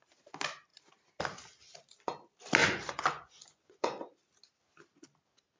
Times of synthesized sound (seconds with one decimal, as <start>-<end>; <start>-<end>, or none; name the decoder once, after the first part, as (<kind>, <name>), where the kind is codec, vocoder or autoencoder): 2.6-4.0 (vocoder, Vocos)